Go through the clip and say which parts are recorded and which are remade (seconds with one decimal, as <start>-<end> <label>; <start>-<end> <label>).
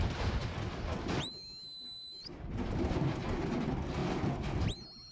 0.0-5.1 recorded